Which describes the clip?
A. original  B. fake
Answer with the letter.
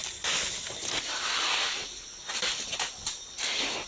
A